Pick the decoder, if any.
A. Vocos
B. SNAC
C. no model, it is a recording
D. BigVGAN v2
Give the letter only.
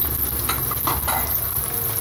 C